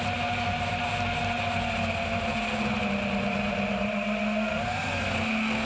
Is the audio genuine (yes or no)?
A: yes